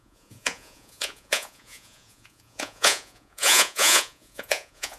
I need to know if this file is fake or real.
fake